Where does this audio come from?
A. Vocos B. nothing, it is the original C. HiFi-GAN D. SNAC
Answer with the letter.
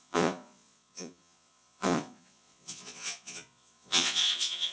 A